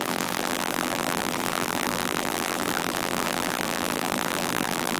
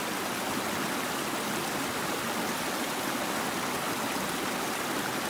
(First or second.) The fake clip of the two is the first